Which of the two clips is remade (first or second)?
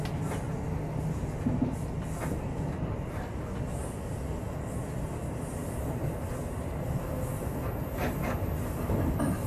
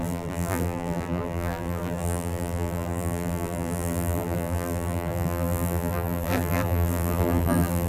second